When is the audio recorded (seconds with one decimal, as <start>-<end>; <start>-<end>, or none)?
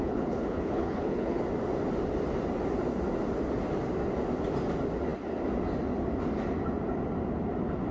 1.4-7.9